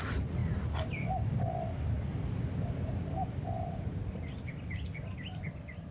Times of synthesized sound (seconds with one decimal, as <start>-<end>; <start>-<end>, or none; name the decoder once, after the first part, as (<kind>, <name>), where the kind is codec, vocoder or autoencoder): none